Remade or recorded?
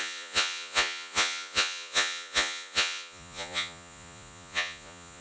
remade